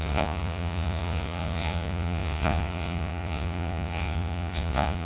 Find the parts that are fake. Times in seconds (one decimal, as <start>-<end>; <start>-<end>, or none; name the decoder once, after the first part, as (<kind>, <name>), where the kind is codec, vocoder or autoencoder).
0.0-5.1 (vocoder, Vocos)